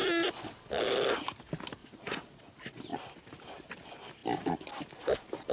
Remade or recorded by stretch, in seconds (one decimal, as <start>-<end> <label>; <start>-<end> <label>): 0.0-1.8 recorded; 1.8-2.4 remade; 2.4-5.5 recorded